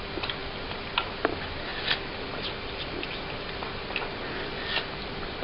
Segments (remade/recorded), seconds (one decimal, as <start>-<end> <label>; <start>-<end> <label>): 0.0-5.4 recorded